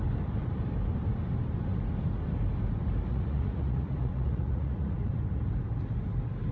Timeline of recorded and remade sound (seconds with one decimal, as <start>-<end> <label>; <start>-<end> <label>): 0.0-3.1 recorded; 3.1-5.1 remade; 5.1-6.5 recorded